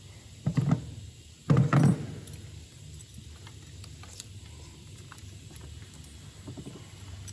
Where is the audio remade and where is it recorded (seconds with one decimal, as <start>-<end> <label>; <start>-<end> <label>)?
0.0-7.3 recorded